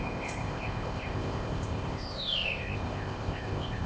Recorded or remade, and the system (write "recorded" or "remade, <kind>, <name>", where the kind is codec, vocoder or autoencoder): remade, codec, ZipCodec